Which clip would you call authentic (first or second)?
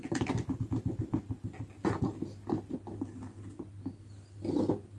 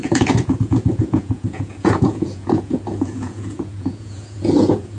first